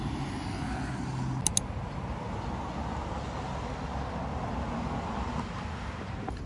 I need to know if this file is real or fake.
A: real